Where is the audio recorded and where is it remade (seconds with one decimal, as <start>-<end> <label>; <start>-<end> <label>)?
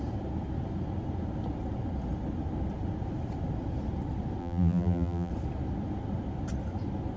0.0-4.4 recorded; 4.4-5.3 remade; 5.3-7.2 recorded